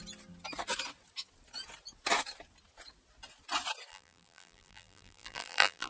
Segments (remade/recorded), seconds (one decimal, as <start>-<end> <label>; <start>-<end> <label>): 0.0-3.9 recorded; 3.9-5.9 remade